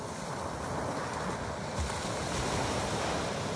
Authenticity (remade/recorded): recorded